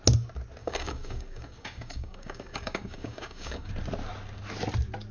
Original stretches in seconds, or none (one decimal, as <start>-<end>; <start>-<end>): 0.0-0.6; 3.7-5.1